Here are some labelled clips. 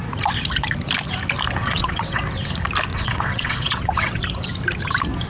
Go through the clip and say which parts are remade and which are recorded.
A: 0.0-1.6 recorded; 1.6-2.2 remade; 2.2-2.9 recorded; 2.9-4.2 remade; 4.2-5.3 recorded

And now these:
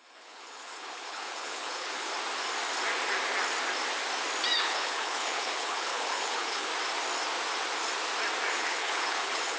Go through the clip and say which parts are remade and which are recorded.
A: 0.0-2.1 remade; 2.1-4.6 recorded; 4.6-6.7 remade; 6.7-8.5 recorded; 8.5-9.6 remade